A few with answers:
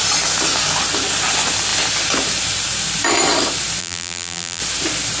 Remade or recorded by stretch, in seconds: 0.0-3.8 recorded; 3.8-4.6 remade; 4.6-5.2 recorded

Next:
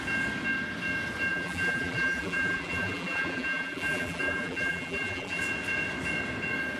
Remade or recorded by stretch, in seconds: 0.0-1.3 recorded; 1.3-5.4 remade; 5.4-6.8 recorded

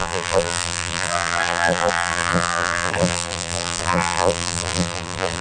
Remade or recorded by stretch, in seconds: 0.0-5.4 remade

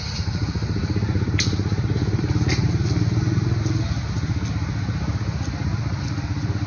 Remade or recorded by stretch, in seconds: 0.0-6.7 recorded

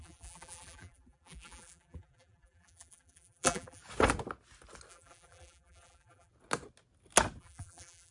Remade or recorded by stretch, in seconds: 0.0-3.8 remade; 3.8-4.9 recorded; 4.9-6.3 remade; 6.3-7.4 recorded; 7.4-8.1 remade

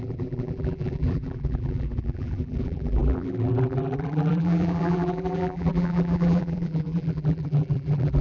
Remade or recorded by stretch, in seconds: 0.0-8.2 remade